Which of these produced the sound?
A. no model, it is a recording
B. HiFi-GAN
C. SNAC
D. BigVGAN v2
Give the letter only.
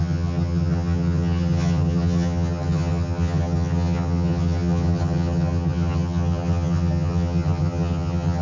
B